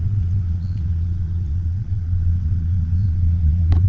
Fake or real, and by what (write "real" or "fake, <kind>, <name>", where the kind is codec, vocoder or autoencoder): fake, vocoder, Vocos